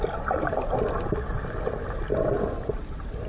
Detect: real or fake real